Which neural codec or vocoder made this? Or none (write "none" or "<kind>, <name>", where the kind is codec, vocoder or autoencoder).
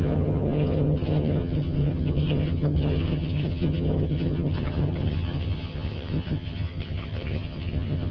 vocoder, HiFi-GAN